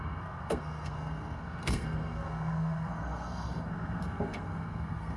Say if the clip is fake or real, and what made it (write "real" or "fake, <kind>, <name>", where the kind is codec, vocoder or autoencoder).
fake, codec, SNAC